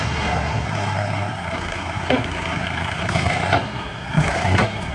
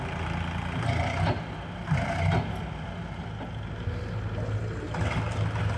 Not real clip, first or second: first